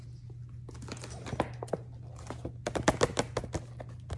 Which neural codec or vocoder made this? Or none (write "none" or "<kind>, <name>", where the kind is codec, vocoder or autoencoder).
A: none